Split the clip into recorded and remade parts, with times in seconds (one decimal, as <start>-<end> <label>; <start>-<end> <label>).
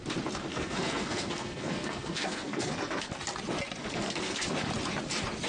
0.0-0.5 recorded; 0.5-3.1 remade; 3.1-3.8 recorded; 3.8-4.4 remade; 4.4-5.5 recorded